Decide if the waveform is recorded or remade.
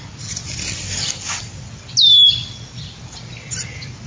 recorded